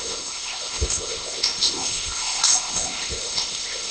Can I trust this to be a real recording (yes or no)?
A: no